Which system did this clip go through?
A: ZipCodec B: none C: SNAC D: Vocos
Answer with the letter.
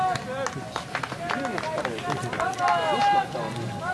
B